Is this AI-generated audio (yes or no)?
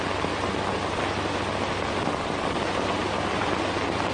no